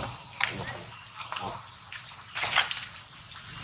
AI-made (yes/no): no